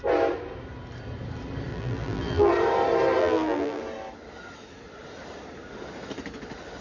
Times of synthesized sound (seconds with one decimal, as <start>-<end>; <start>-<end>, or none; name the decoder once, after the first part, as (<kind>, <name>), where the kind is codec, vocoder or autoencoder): 1.7-2.5 (vocoder, BigVGAN v2); 3.2-3.8